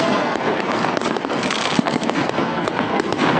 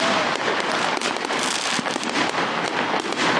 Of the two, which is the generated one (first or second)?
first